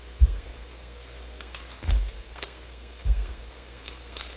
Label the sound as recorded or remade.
remade